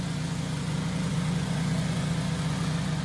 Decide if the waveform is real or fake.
fake